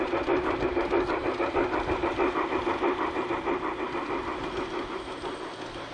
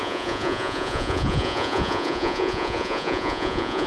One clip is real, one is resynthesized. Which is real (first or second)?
first